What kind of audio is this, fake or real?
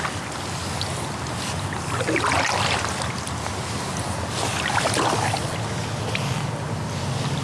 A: real